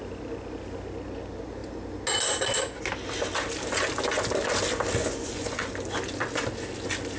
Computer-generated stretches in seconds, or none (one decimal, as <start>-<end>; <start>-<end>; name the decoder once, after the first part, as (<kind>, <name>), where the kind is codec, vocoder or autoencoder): 5.0-5.7 (vocoder, Vocos)